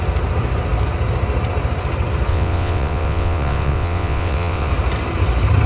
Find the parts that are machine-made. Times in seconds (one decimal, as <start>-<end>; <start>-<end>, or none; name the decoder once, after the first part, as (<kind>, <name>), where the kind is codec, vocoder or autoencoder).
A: 2.3-4.7 (vocoder, WaveNeXt)